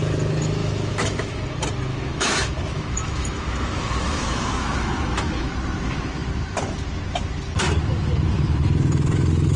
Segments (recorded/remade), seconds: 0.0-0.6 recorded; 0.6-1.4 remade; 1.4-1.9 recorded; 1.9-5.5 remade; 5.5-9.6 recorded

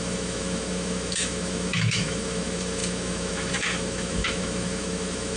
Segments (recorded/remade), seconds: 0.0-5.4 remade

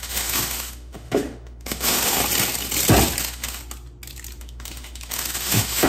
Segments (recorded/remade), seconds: 0.0-2.2 remade; 2.2-3.2 recorded; 3.2-3.6 remade; 3.6-4.4 recorded; 4.4-5.9 remade

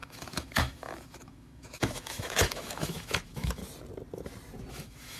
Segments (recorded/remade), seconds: 0.0-3.6 remade; 3.6-4.7 recorded; 4.7-5.2 remade

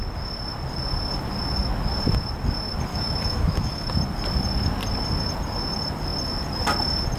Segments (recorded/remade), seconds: 0.0-2.9 recorded; 2.9-3.9 remade; 3.9-7.2 recorded

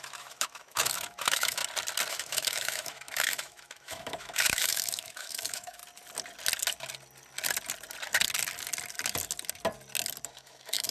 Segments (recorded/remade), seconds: 0.0-1.6 remade; 1.6-2.1 recorded; 2.1-5.8 remade; 5.8-10.3 recorded; 10.3-10.9 remade